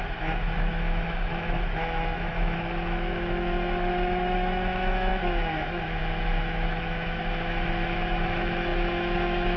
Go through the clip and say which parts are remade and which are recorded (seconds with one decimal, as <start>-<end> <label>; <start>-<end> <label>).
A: 0.0-9.6 remade

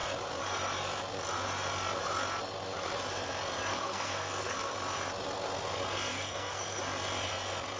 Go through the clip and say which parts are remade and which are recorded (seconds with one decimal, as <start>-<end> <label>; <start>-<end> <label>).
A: 0.0-3.7 recorded; 3.7-4.7 remade; 4.7-6.1 recorded; 6.1-6.8 remade; 6.8-7.8 recorded